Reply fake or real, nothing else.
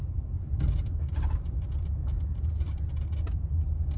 real